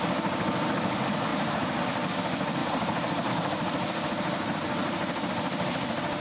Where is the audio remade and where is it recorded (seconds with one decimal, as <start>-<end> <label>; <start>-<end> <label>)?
0.0-1.3 recorded; 1.3-1.8 remade; 1.8-2.6 recorded; 2.6-3.3 remade; 3.3-4.8 recorded; 4.8-5.3 remade; 5.3-6.2 recorded